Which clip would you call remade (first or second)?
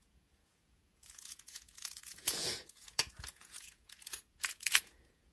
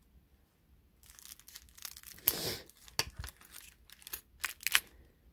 first